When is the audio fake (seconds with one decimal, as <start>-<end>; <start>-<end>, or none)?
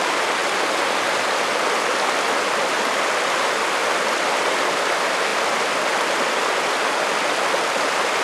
none